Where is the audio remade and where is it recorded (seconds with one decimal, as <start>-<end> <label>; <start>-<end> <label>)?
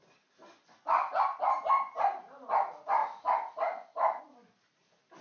0.0-5.2 recorded